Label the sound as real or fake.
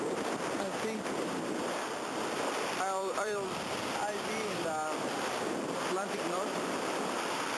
fake